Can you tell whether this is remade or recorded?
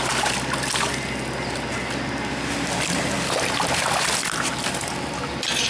recorded